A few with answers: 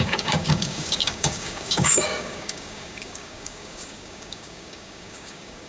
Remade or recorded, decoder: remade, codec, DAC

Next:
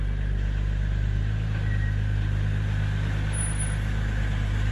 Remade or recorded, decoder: recorded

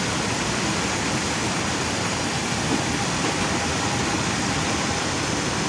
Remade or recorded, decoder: recorded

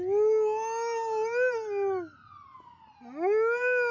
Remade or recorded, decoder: recorded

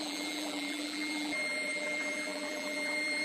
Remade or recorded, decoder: remade, vocoder, BigVGAN v2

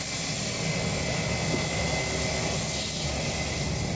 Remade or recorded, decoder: recorded